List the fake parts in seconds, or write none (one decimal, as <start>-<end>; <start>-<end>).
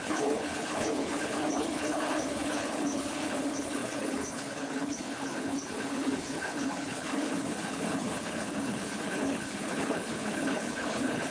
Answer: 0.0-11.3